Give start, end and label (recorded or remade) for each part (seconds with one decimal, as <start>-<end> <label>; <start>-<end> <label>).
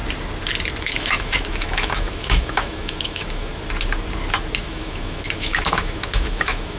0.0-0.8 recorded; 0.8-3.5 remade; 3.5-4.6 recorded; 4.6-6.8 remade